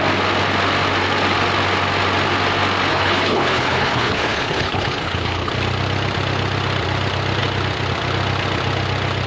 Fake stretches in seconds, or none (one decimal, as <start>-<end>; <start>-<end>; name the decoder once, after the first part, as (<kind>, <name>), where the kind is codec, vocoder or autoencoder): 2.9-5.5 (codec, HILCodec)